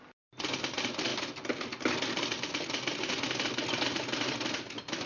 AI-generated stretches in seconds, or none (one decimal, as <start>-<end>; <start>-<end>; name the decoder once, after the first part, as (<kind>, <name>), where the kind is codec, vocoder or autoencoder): none